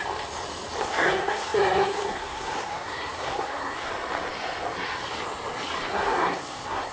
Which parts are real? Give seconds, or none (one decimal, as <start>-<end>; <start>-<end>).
0.0-0.8; 3.9-5.9

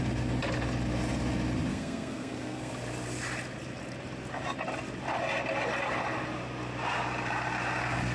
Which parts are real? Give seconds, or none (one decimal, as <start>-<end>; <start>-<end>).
0.0-1.7; 2.7-8.1

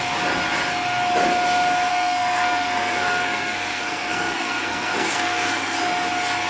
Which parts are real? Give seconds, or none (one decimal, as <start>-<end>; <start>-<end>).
0.0-1.9; 5.8-6.5

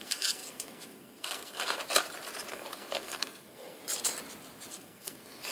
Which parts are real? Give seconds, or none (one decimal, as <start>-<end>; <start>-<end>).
1.8-2.5; 3.8-4.7

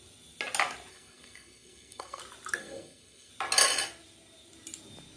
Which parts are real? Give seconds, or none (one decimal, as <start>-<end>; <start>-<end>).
0.0-0.9; 2.2-2.6; 3.3-5.2

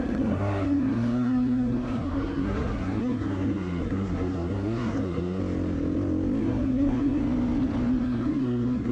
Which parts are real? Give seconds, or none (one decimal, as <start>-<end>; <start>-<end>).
5.4-6.4; 7.2-8.0